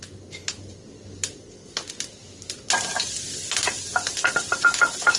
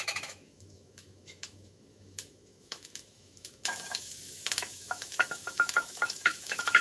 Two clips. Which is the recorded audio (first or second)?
first